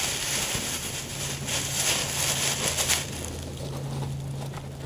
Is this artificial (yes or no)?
no